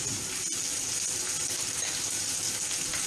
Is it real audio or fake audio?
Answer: real